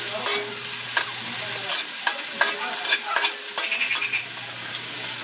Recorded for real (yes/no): yes